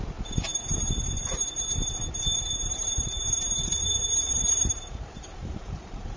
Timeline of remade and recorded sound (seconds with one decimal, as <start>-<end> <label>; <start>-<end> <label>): 0.0-4.2 recorded; 4.2-6.2 remade